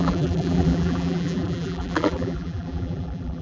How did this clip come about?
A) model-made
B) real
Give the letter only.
A